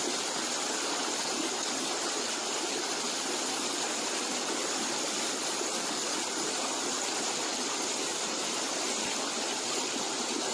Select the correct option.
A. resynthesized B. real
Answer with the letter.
B